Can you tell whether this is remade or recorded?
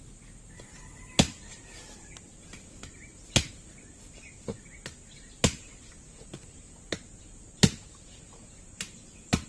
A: recorded